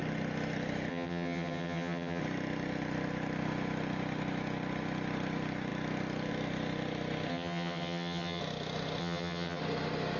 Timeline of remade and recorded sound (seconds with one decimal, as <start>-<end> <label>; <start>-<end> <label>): 0.0-0.9 recorded; 0.9-2.2 remade; 2.2-7.3 recorded; 7.3-8.4 remade; 8.4-9.0 recorded; 9.0-9.6 remade; 9.6-10.2 recorded